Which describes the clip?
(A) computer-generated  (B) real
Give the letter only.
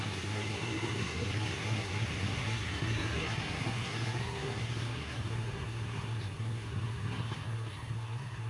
A